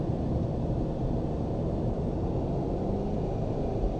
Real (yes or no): yes